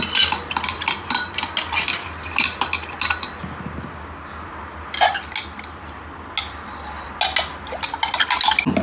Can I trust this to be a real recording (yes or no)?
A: yes